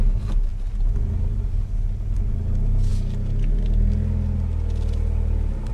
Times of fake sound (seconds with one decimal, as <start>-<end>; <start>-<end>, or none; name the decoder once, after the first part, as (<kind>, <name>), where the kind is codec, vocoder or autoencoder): none